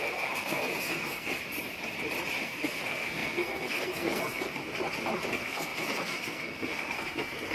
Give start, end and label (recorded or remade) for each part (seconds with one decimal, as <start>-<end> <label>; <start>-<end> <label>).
0.0-1.4 remade; 1.4-2.4 recorded; 2.4-4.6 remade; 4.6-5.3 recorded; 5.3-7.5 remade